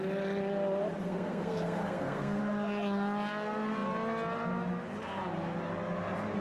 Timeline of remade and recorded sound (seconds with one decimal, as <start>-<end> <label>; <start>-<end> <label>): 0.0-1.0 recorded; 1.0-2.4 remade; 2.4-6.4 recorded